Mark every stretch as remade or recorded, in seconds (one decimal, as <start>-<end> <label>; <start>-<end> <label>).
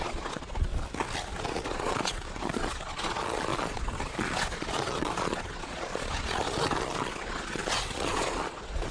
0.0-0.7 remade; 0.7-1.4 recorded; 1.4-8.9 remade